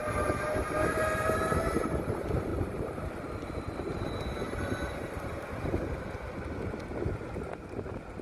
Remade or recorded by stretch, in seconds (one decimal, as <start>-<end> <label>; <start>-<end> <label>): 0.0-2.5 recorded; 2.5-3.1 remade; 3.1-8.2 recorded